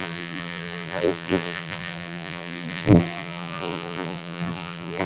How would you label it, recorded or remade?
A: remade